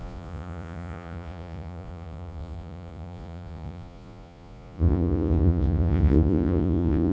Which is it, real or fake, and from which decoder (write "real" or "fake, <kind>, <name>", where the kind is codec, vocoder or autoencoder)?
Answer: fake, vocoder, Vocos